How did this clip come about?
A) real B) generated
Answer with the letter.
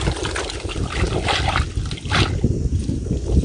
A